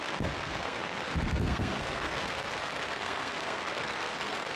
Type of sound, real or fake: fake